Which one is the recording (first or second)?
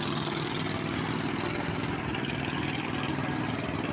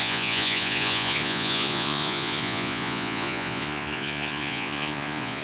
first